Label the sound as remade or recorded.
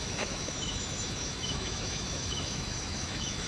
remade